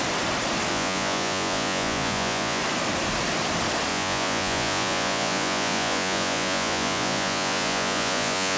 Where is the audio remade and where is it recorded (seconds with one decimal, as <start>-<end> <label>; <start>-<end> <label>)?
0.0-0.7 recorded; 0.7-2.6 remade; 2.6-3.9 recorded; 3.9-8.6 remade